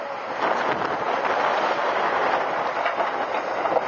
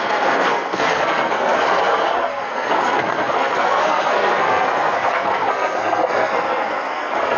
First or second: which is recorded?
first